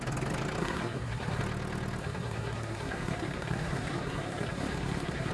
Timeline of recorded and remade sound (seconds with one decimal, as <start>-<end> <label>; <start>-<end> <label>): 0.0-0.6 recorded; 0.6-1.4 remade; 1.4-2.0 recorded; 2.0-5.3 remade